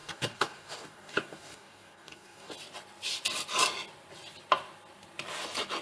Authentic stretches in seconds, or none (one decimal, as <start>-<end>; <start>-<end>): 2.5-5.8